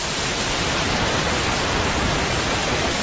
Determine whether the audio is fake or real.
fake